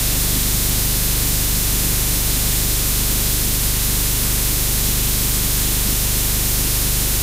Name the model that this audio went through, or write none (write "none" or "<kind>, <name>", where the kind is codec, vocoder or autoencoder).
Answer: autoencoder, DAC-VAE